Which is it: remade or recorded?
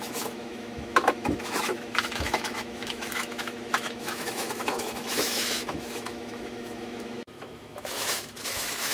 remade